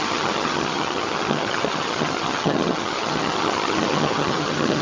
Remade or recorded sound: remade